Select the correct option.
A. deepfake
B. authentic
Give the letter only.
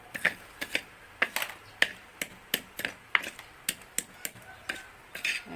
B